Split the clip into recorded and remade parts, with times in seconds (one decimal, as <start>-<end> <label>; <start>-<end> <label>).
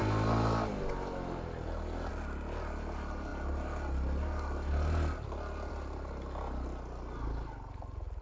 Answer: 0.0-8.2 recorded